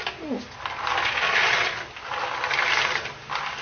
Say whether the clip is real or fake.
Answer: real